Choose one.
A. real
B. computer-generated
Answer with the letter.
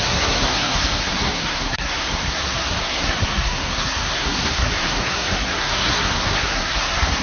B